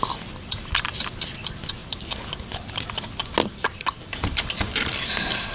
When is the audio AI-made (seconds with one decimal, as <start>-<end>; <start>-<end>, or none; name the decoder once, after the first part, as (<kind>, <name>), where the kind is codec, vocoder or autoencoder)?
none